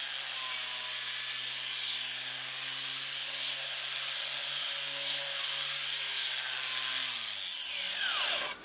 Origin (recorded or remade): recorded